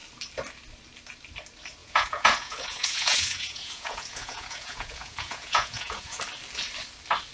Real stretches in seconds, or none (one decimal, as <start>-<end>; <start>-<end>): 0.0-1.8; 6.2-7.3